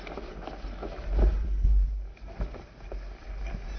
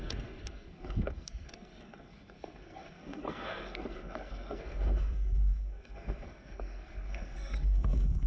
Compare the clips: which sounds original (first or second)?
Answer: first